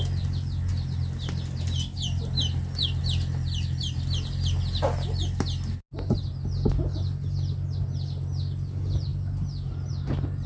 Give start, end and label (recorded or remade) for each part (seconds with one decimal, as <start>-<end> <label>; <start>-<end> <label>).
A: 0.0-10.5 recorded